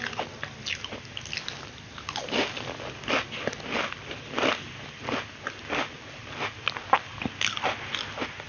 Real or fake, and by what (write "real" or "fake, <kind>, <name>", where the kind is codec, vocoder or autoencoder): real